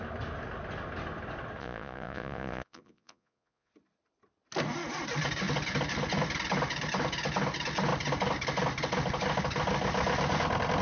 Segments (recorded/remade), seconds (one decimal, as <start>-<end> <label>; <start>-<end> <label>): 0.0-1.6 recorded; 1.6-3.7 remade; 3.7-10.8 recorded